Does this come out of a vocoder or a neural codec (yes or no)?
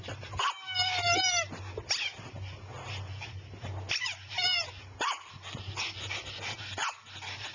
no